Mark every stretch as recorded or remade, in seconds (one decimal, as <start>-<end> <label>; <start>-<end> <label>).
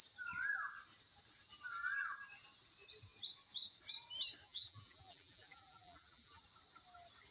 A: 0.0-4.5 recorded; 4.5-6.4 remade; 6.4-7.3 recorded